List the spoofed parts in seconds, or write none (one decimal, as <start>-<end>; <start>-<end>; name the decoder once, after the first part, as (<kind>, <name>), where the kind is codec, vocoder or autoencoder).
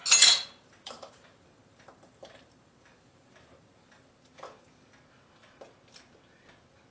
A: 0.0-4.1 (vocoder, BigVGAN v2)